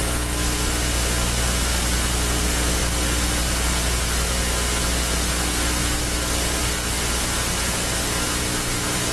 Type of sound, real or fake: real